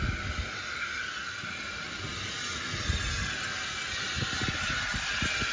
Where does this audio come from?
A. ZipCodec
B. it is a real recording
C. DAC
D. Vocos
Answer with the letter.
B